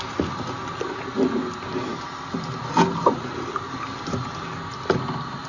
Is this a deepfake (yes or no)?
no